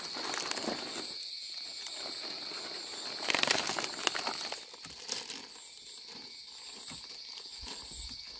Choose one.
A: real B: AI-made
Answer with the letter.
A